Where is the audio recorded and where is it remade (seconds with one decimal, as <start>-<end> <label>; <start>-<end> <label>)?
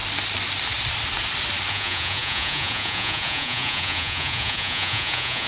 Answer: 0.0-1.7 recorded; 1.7-5.5 remade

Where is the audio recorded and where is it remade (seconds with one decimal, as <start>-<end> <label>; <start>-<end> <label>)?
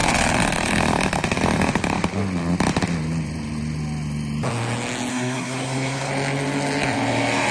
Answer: 0.0-5.1 recorded; 5.1-6.1 remade; 6.1-7.5 recorded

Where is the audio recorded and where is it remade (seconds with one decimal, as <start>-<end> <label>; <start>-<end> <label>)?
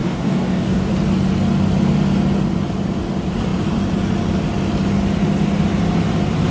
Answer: 0.0-0.9 remade; 0.9-6.5 recorded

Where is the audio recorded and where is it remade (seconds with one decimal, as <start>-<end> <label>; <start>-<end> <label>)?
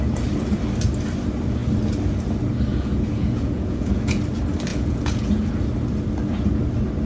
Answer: 0.0-2.7 recorded; 2.7-4.2 remade; 4.2-4.7 recorded; 4.7-5.5 remade; 5.5-7.1 recorded